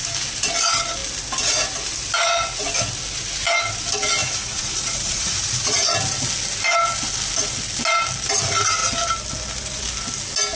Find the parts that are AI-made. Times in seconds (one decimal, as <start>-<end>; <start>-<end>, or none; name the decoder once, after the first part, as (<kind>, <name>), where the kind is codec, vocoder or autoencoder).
4.2-5.9 (vocoder, Vocos)